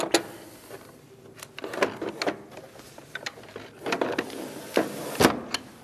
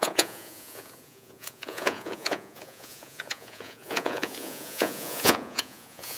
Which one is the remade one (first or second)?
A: second